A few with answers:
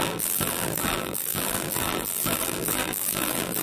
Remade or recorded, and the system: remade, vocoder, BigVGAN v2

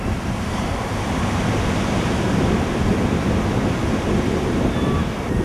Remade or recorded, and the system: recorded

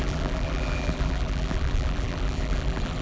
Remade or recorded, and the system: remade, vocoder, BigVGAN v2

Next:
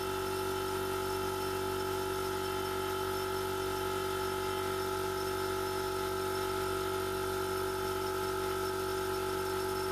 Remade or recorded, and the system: recorded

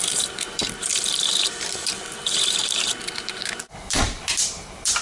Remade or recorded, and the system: remade, vocoder, BigVGAN v2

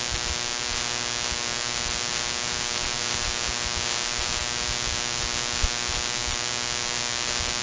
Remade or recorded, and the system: recorded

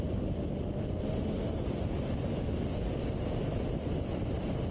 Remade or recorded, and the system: recorded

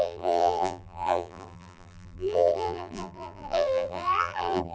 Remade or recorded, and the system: remade, vocoder, BigVGAN v2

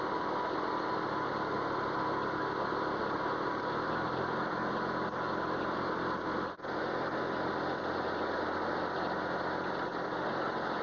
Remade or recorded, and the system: recorded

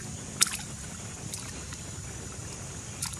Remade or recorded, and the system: recorded